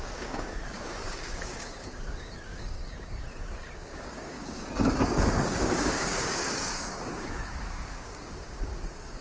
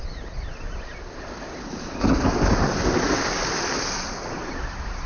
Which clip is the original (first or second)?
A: second